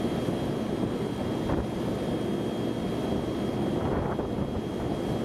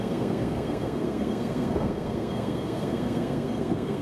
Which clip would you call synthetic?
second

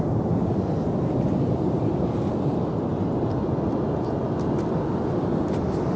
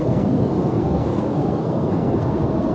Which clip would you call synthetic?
second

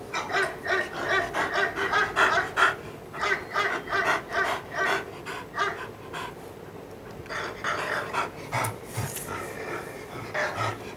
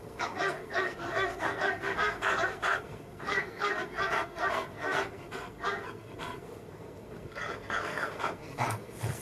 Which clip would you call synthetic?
second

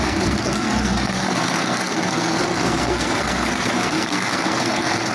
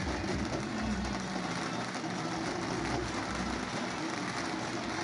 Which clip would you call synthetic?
first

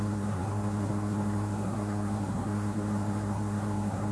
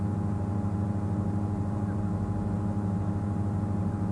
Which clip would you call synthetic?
first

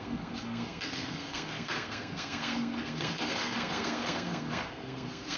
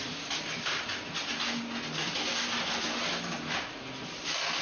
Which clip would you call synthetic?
first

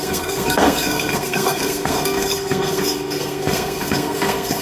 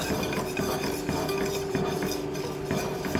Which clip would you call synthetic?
first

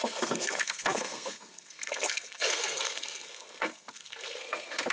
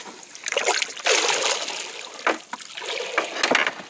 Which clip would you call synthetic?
first